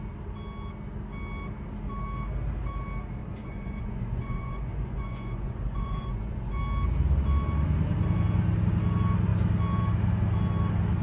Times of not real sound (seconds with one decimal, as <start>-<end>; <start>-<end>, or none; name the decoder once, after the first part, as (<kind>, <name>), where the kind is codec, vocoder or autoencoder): 3.2-6.6 (vocoder, Vocos)